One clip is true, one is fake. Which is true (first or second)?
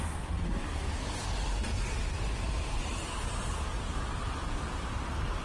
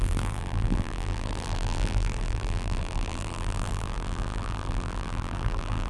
first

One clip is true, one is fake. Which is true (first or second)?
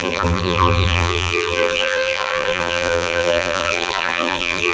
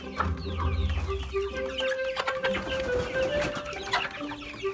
second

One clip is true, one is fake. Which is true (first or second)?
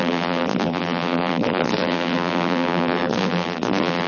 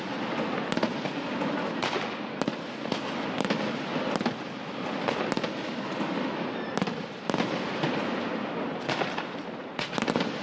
second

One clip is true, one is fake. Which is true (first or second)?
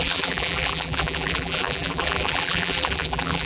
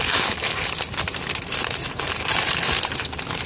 second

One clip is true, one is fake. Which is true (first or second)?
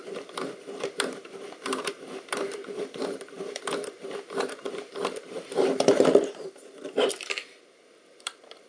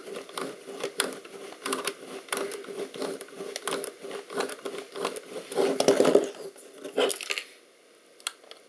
second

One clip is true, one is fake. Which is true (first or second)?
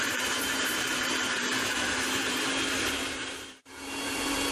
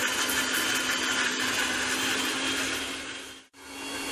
second